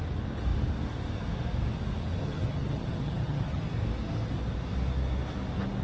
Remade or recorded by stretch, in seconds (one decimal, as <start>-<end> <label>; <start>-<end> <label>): 0.0-2.2 recorded; 2.2-3.6 remade; 3.6-5.8 recorded